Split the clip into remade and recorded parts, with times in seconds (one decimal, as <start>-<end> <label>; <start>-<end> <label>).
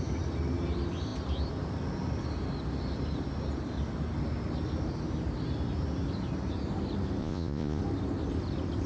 0.0-7.2 recorded; 7.2-7.8 remade; 7.8-8.9 recorded